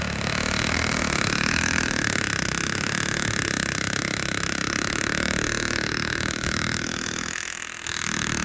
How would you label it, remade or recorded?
remade